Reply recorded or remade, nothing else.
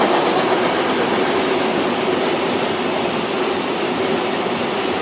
recorded